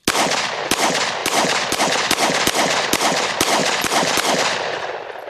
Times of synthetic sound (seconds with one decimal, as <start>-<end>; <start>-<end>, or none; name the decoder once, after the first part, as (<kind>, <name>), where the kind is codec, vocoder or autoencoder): 1.2-1.8 (vocoder, BigVGAN v2); 3.6-4.3